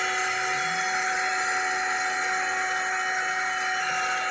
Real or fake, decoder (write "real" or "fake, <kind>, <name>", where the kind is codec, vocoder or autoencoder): real